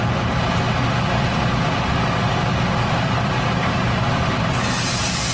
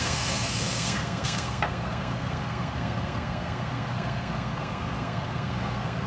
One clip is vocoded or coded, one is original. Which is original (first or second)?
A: first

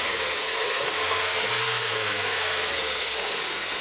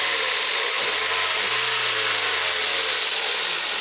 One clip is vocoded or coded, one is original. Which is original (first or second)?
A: second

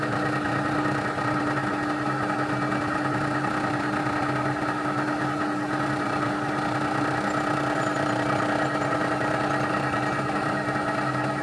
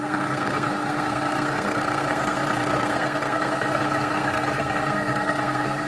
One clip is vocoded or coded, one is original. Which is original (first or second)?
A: first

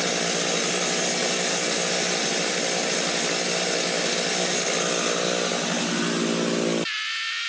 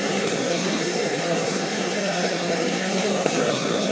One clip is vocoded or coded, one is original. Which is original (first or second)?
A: first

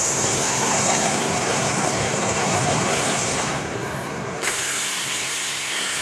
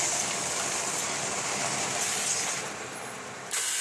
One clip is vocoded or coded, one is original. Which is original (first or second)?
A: second